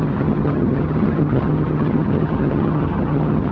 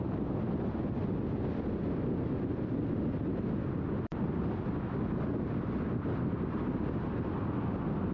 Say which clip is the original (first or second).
second